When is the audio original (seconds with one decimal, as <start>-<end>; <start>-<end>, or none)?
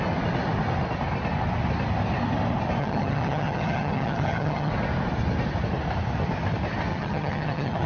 0.0-2.8; 4.7-6.9